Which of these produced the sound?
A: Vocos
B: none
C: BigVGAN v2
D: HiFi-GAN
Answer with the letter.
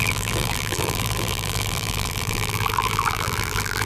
C